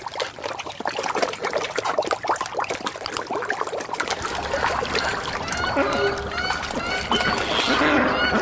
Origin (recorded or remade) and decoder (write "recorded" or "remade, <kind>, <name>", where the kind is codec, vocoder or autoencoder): recorded